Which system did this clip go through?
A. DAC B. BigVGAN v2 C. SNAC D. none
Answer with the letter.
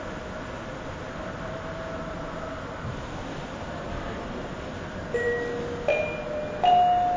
D